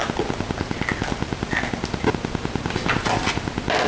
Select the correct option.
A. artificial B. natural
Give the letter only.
B